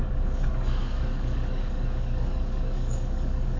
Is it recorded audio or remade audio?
remade